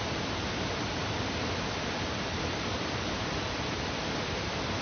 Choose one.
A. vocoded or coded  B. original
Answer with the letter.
B